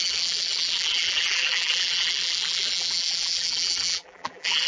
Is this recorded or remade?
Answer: remade